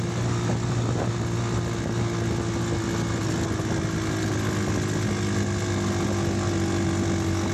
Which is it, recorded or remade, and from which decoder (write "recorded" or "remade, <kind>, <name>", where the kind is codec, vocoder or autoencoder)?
recorded